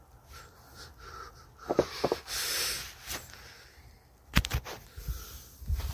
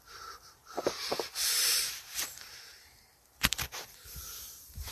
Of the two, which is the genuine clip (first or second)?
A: first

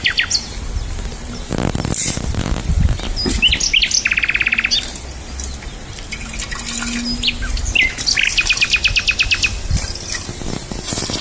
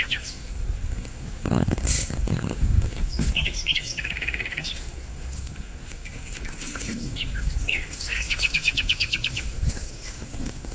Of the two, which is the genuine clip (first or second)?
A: first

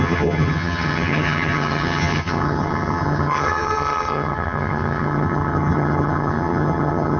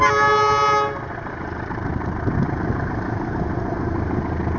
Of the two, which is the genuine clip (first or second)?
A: second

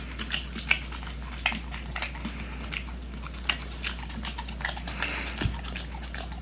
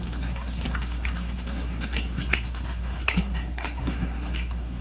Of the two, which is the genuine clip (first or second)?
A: first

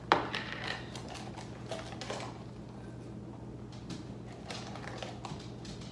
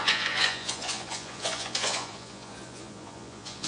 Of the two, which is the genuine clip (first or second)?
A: first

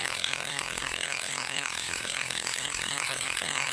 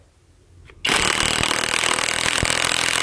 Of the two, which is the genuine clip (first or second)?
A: second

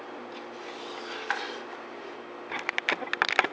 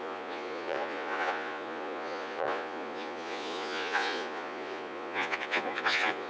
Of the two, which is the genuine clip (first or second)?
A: first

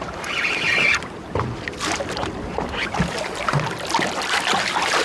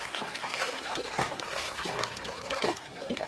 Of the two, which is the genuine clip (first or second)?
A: first